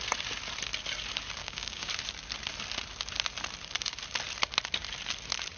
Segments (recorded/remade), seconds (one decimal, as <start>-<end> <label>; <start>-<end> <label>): 0.0-1.4 recorded; 1.4-1.9 remade; 1.9-5.6 recorded